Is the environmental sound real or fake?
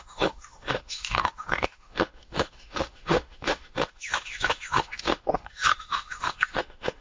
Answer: fake